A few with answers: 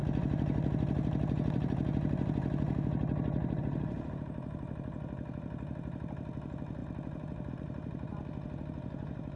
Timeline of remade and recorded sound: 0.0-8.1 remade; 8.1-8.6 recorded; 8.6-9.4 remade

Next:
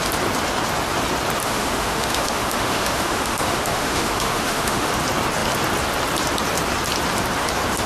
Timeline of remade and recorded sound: 0.0-1.4 recorded; 1.4-4.9 remade; 4.9-7.9 recorded

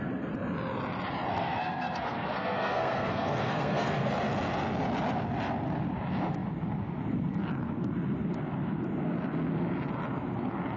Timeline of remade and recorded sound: 0.0-1.3 recorded; 1.3-4.1 remade; 4.1-10.8 recorded

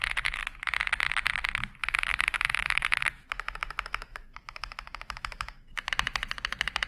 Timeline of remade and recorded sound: 0.0-1.8 recorded; 1.8-5.9 remade; 5.9-6.9 recorded